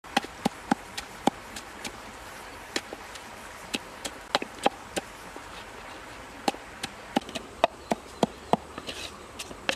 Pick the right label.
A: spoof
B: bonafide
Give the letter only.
B